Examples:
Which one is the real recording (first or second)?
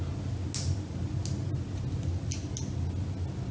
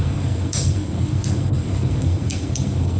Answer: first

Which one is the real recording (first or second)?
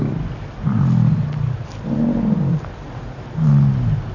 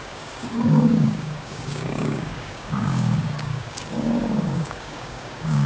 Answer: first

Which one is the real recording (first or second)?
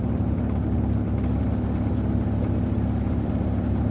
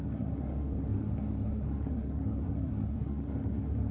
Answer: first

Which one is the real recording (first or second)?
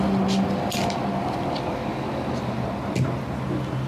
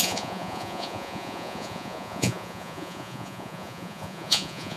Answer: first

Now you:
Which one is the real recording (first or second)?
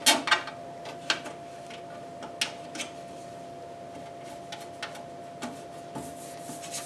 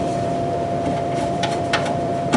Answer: first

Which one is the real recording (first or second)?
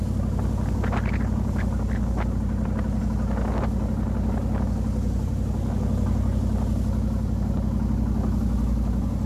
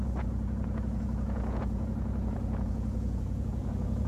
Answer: first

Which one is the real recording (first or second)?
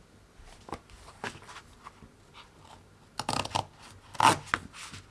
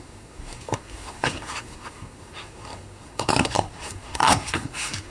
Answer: first